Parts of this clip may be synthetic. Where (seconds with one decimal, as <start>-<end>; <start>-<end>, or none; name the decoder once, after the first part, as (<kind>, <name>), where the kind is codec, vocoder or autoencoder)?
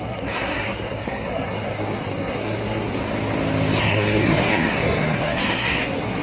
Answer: 0.0-3.0 (codec, SNAC); 3.8-6.2